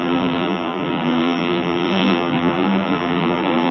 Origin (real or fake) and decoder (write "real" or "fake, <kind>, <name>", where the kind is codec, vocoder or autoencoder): fake, vocoder, BigVGAN v2